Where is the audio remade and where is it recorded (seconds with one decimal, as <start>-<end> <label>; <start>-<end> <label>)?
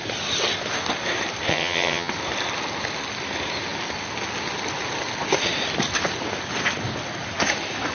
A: 0.0-1.5 recorded; 1.5-2.1 remade; 2.1-7.9 recorded